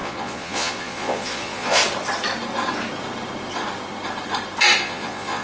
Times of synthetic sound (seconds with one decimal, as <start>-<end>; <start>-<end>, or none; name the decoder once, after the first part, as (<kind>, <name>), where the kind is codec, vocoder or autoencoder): 0.0-1.8 (vocoder, Vocos); 4.8-5.4